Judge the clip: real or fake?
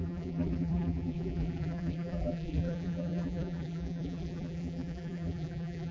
fake